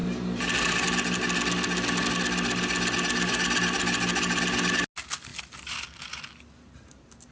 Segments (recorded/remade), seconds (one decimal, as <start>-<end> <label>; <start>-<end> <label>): 0.0-7.3 recorded